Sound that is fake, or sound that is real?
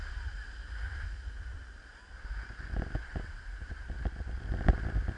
real